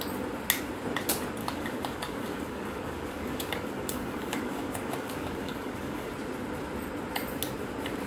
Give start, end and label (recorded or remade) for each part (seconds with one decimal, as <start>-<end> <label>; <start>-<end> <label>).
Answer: 0.0-1.4 recorded; 1.4-6.1 remade; 6.1-8.1 recorded